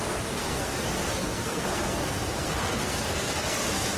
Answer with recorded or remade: remade